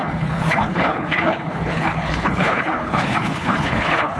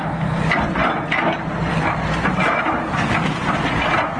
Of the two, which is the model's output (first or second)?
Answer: first